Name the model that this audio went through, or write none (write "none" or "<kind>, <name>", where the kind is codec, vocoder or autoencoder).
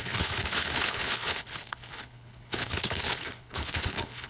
codec, HILCodec